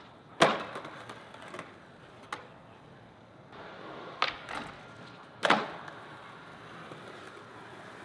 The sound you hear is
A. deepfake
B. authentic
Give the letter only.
B